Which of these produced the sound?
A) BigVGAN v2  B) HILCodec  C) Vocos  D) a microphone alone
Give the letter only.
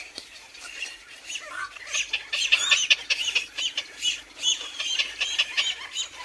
A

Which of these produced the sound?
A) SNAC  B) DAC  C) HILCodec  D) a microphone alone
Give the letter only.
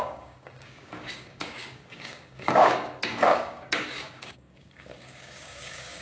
B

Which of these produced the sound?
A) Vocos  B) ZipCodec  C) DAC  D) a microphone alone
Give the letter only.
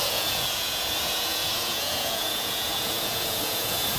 A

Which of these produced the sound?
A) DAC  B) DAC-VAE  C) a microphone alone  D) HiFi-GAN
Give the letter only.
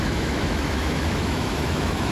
B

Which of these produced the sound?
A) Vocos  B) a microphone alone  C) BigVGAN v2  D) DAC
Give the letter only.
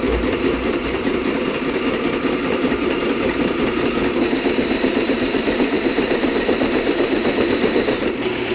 C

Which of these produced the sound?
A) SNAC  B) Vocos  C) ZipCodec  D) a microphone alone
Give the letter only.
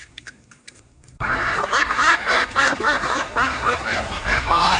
A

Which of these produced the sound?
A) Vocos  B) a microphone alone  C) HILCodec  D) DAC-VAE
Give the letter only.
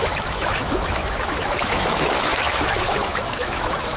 D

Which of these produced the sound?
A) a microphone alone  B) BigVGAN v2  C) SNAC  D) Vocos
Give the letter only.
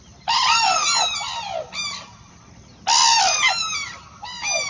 A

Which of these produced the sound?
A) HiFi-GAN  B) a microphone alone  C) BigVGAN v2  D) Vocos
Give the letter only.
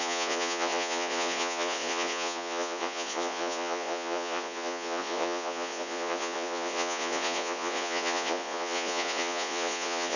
D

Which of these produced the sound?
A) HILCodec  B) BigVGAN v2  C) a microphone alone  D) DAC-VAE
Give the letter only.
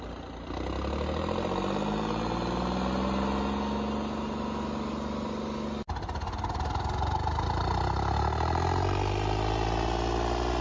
C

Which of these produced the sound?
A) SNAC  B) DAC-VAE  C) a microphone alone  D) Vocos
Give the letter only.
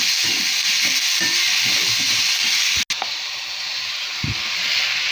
C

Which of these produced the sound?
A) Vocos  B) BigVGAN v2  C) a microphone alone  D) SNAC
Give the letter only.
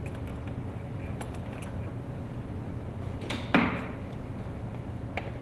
C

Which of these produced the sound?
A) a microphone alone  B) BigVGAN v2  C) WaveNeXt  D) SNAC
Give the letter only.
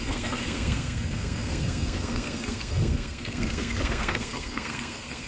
D